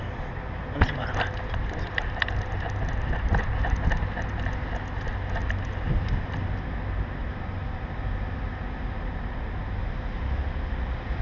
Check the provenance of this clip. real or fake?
real